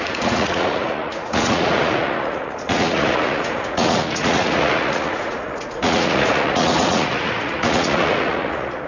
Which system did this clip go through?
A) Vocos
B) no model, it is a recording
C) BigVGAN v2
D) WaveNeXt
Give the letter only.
A